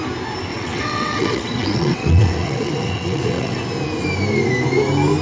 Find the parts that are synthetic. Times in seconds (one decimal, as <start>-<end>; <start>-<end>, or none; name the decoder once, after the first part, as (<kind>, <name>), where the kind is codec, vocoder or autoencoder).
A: 0.5-3.6 (vocoder, WaveNeXt)